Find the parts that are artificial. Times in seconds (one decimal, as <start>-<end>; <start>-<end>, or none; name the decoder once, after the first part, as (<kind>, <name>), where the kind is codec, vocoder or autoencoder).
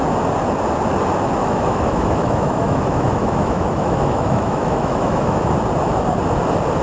1.4-5.5 (autoencoder, DAC-VAE)